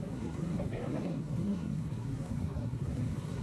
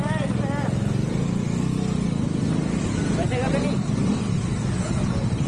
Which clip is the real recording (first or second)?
second